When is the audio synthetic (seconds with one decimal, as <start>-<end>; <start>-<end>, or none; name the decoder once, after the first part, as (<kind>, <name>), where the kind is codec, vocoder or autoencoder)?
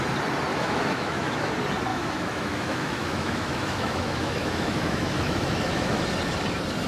0.5-1.5 (autoencoder, DAC-VAE); 1.9-6.0